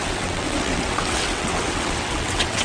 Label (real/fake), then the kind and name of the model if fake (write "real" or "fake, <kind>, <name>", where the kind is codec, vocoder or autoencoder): fake, vocoder, WaveNeXt